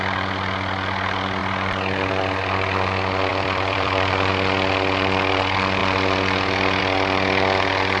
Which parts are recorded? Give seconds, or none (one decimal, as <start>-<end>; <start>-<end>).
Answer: 0.0-3.3; 4.3-8.0